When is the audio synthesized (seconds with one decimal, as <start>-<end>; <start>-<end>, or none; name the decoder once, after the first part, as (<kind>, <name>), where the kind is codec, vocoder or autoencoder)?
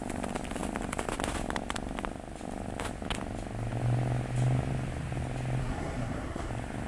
5.6-6.5 (codec, SNAC)